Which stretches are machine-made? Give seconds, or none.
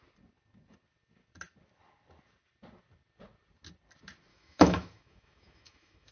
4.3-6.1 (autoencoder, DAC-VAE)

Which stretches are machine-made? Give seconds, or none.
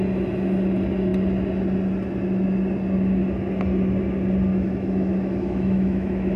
4.5-6.4 (autoencoder, DAC-VAE)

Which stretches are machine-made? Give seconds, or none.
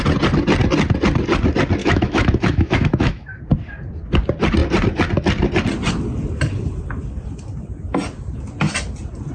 1.8-3.4 (autoencoder, DAC-VAE)